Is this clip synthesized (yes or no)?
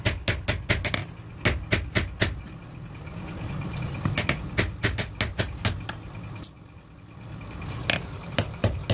no